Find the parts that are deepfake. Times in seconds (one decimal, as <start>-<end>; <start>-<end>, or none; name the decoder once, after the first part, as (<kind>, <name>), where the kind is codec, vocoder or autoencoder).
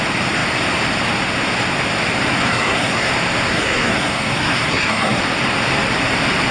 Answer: 2.5-3.1 (codec, SNAC); 3.5-5.2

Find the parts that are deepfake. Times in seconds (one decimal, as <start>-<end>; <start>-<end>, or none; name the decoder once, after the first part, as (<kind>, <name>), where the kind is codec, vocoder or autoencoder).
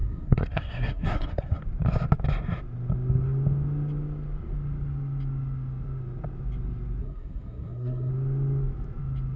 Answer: 0.0-1.6 (codec, SNAC); 7.0-8.1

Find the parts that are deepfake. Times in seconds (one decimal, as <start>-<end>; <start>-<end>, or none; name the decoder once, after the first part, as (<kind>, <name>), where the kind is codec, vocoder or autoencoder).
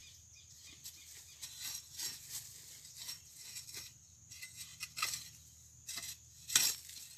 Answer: none